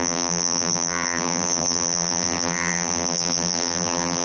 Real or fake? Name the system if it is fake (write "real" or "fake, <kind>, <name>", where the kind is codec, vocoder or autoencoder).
fake, vocoder, BigVGAN v2